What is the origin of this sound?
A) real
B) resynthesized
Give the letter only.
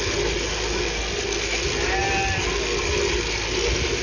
A